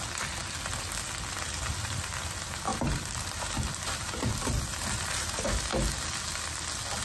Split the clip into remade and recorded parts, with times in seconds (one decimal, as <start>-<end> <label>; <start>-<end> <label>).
0.0-0.4 remade; 0.4-1.7 recorded; 1.7-5.7 remade; 5.7-7.0 recorded